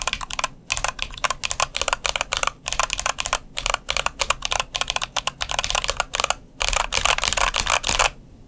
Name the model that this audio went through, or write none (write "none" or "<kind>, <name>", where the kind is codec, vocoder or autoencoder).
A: none